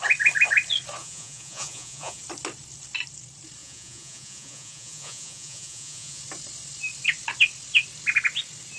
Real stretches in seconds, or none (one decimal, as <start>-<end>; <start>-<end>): 0.0-1.0; 2.2-3.6; 6.2-8.8